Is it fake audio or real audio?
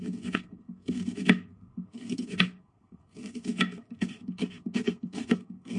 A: fake